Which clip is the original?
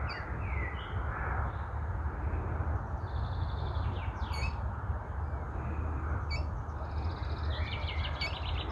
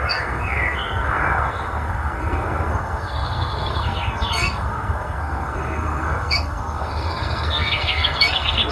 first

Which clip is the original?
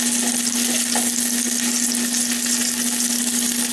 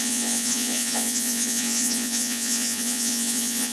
first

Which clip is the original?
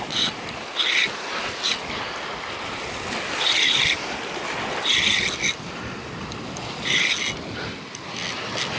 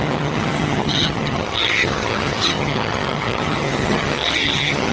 first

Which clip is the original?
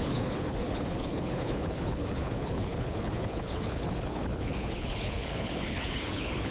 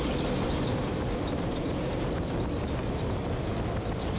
second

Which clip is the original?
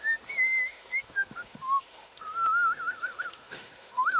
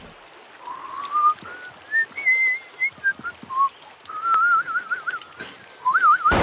second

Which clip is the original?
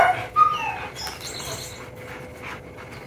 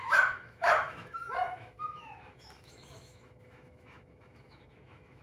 first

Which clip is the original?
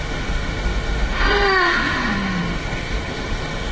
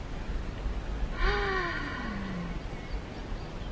second